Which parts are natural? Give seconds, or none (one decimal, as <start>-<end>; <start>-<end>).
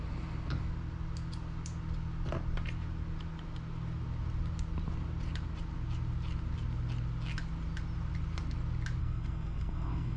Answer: 0.0-9.0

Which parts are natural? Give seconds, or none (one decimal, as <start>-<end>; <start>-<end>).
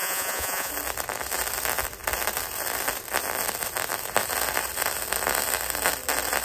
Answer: 0.7-6.4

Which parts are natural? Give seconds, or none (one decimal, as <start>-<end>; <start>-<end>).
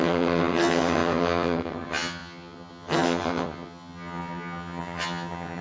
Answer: none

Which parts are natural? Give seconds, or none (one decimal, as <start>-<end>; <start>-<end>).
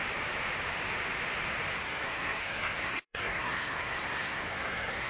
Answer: 0.0-1.7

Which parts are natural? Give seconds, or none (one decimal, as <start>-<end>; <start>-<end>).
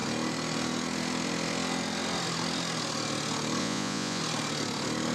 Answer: 0.0-3.6; 4.2-5.1